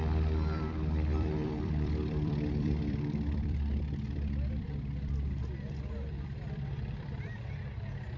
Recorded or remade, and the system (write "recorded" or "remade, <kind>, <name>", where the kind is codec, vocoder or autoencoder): remade, vocoder, BigVGAN v2